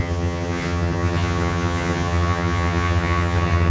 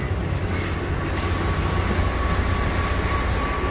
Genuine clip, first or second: second